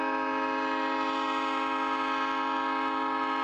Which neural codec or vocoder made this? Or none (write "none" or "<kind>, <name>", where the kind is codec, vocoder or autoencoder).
none